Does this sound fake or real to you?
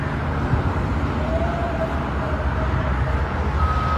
real